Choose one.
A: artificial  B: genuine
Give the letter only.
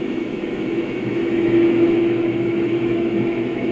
A